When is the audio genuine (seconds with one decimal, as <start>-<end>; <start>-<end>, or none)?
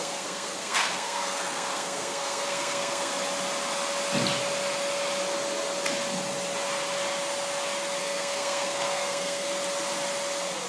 3.1-8.0; 9.5-10.7